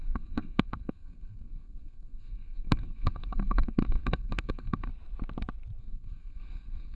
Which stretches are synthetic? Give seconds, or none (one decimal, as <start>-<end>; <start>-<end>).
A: 0.0-4.9; 5.8-6.9